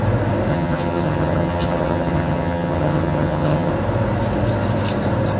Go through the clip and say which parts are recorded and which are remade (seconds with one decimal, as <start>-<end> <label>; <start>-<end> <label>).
0.0-0.5 recorded; 0.5-3.7 remade; 3.7-5.4 recorded

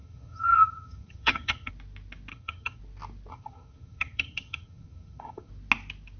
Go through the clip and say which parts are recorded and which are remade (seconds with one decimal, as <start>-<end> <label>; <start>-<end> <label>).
0.0-1.7 remade; 1.7-2.3 recorded; 2.3-2.8 remade; 2.8-3.3 recorded; 3.3-5.5 remade; 5.5-6.2 recorded

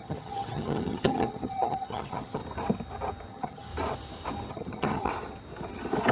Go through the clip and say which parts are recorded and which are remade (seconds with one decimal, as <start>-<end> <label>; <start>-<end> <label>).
0.0-2.4 remade; 2.4-3.3 recorded; 3.3-3.7 remade; 3.7-4.5 recorded; 4.5-5.1 remade; 5.1-6.1 recorded

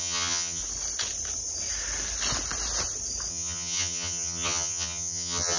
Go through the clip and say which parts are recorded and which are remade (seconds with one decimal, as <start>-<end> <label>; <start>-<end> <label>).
0.0-0.6 remade; 0.6-3.3 recorded; 3.3-5.6 remade

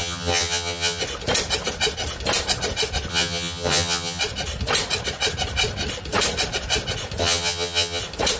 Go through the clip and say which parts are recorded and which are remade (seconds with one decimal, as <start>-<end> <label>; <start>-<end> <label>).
0.0-1.0 remade; 1.0-3.1 recorded; 3.1-4.2 remade; 4.2-7.2 recorded; 7.2-8.0 remade; 8.0-8.4 recorded

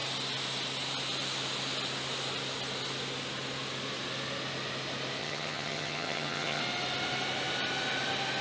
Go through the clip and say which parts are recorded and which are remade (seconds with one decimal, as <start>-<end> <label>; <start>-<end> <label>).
0.0-5.2 recorded; 5.2-6.6 remade; 6.6-8.4 recorded

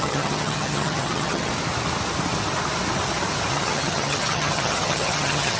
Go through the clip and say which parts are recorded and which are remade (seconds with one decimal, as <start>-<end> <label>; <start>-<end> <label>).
0.0-1.5 remade; 1.5-3.5 recorded; 3.5-5.6 remade

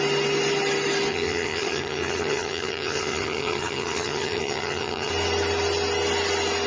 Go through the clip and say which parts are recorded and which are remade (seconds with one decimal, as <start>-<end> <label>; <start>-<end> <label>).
0.0-1.1 recorded; 1.1-5.1 remade; 5.1-6.7 recorded